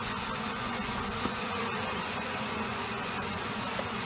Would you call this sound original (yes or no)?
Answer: no